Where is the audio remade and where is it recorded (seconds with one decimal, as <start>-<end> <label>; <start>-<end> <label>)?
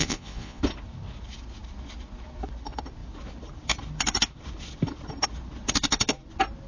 0.0-0.6 remade; 0.6-6.7 recorded